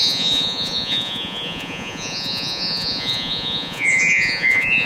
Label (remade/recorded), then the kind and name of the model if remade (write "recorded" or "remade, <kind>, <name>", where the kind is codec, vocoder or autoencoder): remade, vocoder, Vocos